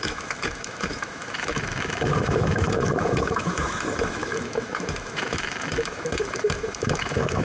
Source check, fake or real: fake